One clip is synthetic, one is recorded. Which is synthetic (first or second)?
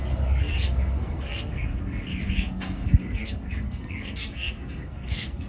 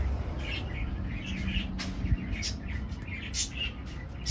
first